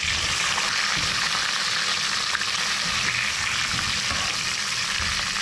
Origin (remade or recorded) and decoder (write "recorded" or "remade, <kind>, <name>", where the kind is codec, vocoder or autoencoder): recorded